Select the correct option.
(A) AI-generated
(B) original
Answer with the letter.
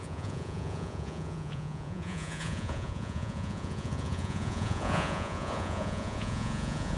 A